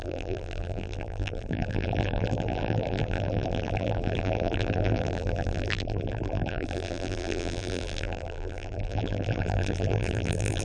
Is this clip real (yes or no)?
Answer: no